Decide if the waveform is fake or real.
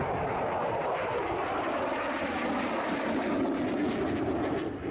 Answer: real